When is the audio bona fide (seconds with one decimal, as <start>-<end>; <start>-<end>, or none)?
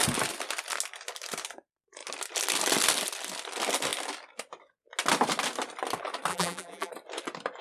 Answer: 0.0-6.3; 6.9-7.6